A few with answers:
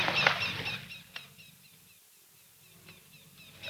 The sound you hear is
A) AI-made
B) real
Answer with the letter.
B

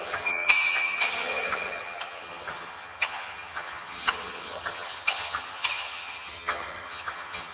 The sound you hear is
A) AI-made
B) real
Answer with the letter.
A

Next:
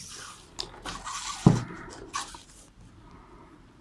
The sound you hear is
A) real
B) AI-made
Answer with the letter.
A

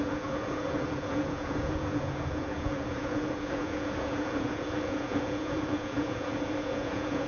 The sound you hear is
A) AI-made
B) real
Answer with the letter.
A